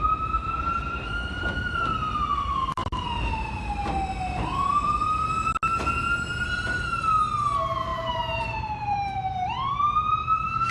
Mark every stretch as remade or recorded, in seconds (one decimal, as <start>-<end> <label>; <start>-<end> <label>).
0.0-2.8 remade; 2.8-6.0 recorded; 6.0-10.7 remade